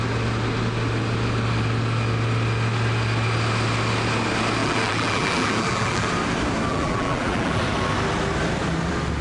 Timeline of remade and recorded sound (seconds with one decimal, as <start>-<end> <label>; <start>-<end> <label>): 0.0-4.6 recorded; 4.6-6.1 remade; 6.1-6.7 recorded; 6.7-7.6 remade; 7.6-9.2 recorded